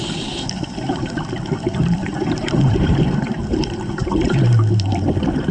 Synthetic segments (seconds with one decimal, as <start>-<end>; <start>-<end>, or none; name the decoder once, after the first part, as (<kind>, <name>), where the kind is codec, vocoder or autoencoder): 2.1-4.4 (vocoder, BigVGAN v2)